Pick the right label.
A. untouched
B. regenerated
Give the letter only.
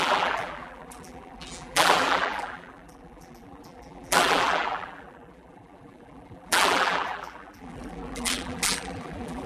B